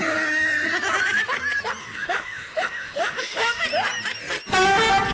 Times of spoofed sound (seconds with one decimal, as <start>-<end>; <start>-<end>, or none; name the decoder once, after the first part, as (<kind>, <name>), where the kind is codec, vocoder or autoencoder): 1.8-3.6 (autoencoder, DAC-VAE)